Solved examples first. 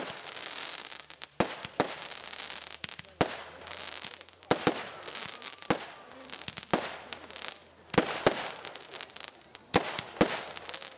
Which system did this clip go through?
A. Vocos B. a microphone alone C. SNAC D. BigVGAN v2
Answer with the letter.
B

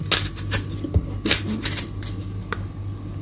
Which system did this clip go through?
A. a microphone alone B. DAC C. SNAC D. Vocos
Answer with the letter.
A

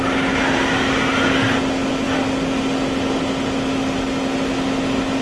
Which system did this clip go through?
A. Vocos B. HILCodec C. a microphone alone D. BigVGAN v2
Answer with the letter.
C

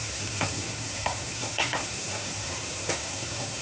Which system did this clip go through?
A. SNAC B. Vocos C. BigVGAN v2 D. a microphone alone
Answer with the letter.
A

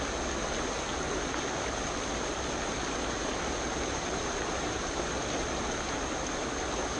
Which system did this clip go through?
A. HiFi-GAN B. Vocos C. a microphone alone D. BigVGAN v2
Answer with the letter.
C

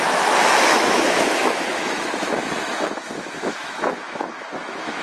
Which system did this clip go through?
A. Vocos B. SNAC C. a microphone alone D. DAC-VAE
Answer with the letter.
D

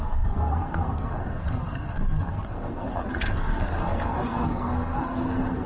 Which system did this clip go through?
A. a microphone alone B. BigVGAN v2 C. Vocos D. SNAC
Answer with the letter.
D